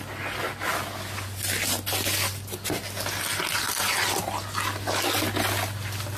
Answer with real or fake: real